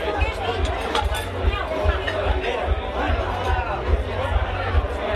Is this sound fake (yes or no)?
no